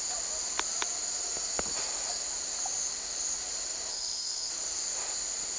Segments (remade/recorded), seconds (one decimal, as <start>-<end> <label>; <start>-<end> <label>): 0.0-3.9 recorded; 3.9-4.5 remade; 4.5-5.6 recorded